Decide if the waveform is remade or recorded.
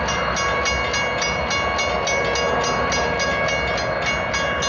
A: recorded